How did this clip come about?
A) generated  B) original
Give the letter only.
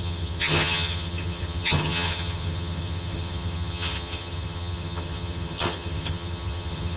A